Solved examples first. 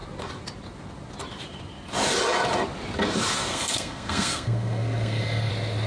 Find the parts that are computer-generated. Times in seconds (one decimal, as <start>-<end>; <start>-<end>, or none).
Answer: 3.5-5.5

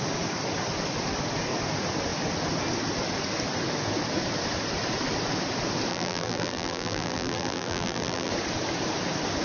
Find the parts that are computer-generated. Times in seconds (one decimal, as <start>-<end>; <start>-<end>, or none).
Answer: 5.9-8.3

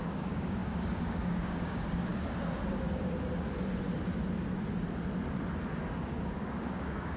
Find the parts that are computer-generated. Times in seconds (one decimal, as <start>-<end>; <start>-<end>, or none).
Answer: 0.0-2.1; 5.8-7.2

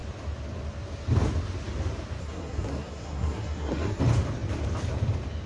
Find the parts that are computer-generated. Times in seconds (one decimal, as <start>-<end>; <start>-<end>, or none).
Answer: 2.2-4.0

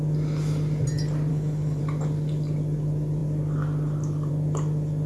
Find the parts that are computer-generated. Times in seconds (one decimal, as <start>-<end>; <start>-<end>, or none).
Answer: 1.3-1.8

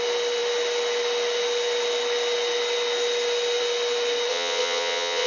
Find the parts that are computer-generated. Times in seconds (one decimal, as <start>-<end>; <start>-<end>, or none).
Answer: 4.3-5.3

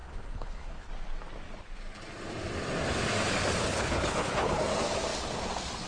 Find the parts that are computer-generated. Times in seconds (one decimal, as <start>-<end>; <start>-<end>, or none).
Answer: 0.0-0.9; 3.6-4.6

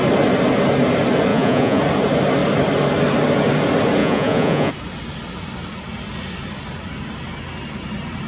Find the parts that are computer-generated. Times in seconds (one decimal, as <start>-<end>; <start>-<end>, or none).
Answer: 1.3-1.8; 4.0-4.7